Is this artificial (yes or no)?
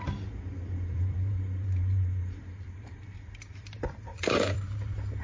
yes